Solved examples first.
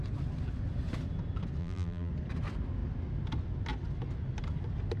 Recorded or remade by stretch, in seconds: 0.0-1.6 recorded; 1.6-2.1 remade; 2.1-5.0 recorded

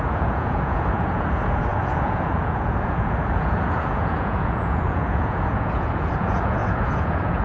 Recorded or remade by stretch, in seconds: 0.0-7.4 remade

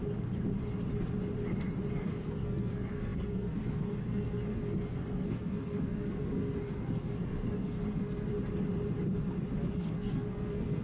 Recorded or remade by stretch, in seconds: 0.0-1.9 recorded; 1.9-8.3 remade; 8.3-9.7 recorded; 9.7-10.8 remade

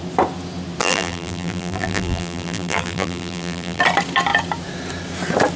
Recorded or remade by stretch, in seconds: 0.0-0.8 recorded; 0.8-3.8 remade; 3.8-5.6 recorded

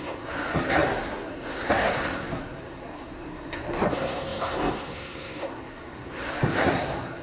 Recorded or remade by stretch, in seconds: 0.0-7.2 remade

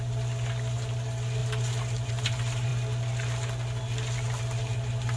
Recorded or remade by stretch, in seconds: 0.0-5.2 recorded